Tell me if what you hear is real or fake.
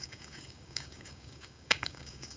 fake